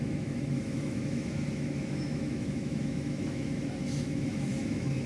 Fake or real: fake